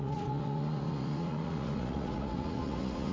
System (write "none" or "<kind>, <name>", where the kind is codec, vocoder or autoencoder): vocoder, Vocos